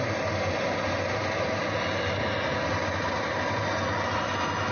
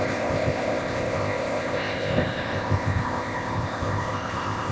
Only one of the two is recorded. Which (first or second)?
first